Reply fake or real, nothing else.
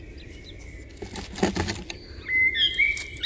real